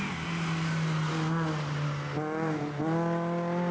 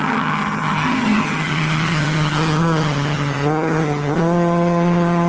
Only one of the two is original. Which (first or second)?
first